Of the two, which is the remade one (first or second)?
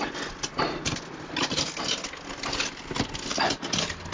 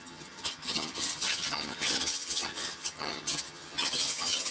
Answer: second